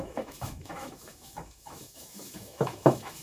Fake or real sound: fake